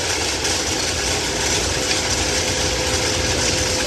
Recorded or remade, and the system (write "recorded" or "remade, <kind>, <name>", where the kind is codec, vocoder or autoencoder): recorded